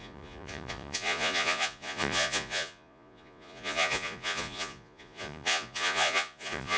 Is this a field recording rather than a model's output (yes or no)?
no